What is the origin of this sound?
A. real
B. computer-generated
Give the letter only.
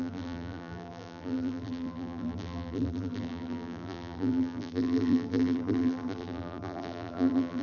B